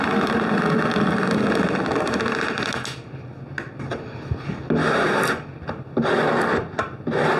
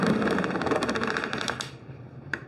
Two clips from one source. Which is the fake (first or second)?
second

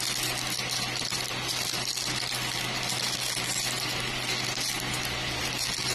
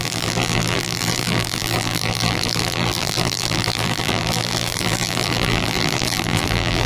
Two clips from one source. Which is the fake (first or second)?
second